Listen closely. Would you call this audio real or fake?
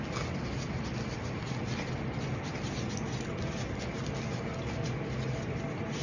real